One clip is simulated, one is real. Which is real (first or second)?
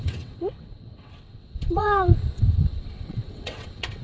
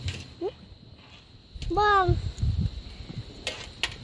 second